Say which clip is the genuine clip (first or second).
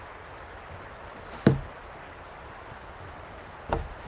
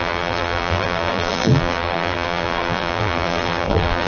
first